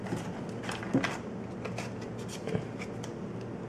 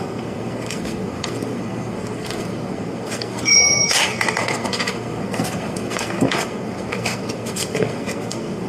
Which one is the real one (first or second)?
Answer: first